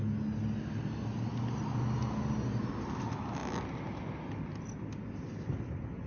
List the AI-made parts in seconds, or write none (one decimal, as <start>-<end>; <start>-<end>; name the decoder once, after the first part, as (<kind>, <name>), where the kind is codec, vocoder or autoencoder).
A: none